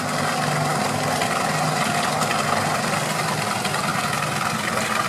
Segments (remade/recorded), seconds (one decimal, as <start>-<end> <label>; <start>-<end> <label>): 0.0-5.1 recorded